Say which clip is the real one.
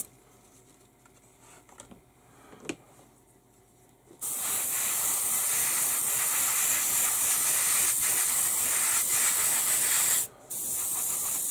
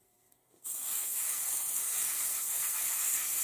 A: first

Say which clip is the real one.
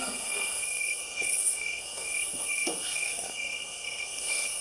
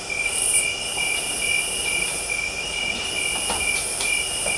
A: second